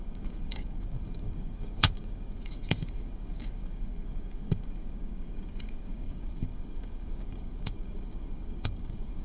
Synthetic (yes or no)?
yes